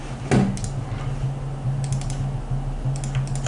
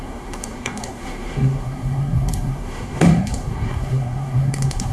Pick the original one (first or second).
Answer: first